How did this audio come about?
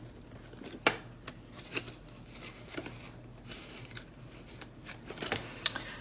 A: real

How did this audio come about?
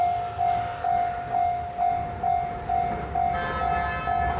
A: real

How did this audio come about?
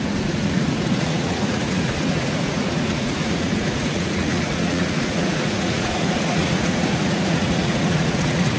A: fake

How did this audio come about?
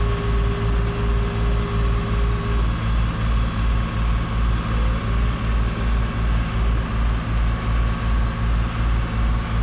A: real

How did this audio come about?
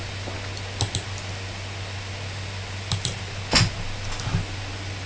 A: real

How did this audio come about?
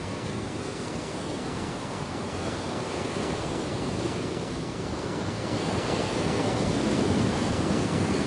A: fake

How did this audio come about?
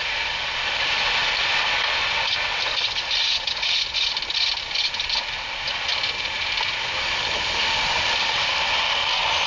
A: real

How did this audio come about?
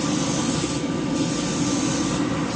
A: real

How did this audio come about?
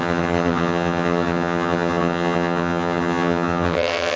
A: fake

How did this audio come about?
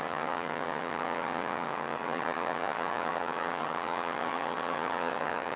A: fake